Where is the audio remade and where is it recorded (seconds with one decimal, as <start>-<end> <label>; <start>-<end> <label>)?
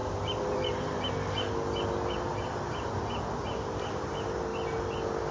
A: 0.0-1.1 remade; 1.1-5.3 recorded